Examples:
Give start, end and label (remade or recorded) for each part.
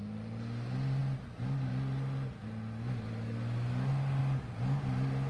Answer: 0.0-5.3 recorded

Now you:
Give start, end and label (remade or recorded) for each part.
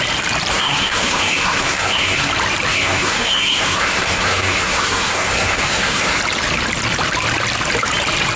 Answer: 0.0-0.5 recorded; 0.5-2.3 remade; 2.3-2.7 recorded; 2.7-6.2 remade; 6.2-8.4 recorded